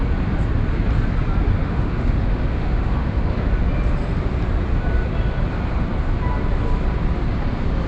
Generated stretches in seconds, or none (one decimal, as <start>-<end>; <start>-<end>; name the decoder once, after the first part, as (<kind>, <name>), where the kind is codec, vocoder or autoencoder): 1.6-3.5 (autoencoder, DAC-VAE)